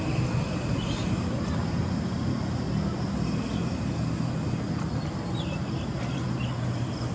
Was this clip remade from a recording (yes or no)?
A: no